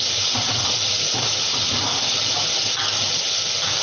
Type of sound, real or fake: real